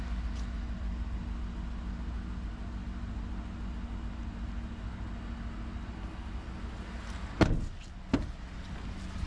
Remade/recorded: recorded